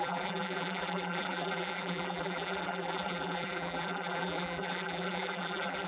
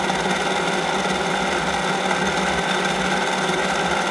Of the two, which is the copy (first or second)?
first